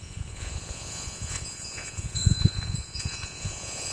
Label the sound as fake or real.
fake